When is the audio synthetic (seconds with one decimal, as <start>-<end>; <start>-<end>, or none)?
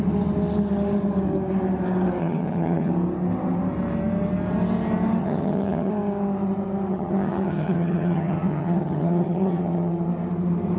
2.2-2.9; 5.2-5.9; 6.9-9.9